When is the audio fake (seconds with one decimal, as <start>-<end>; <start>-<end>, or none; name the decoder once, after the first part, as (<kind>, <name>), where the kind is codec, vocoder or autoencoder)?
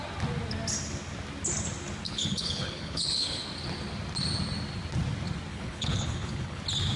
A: 2.1-3.4 (codec, HILCodec); 5.5-6.6